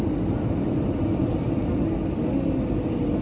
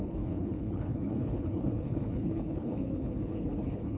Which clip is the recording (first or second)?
first